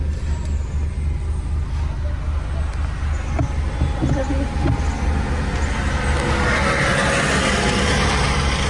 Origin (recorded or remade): recorded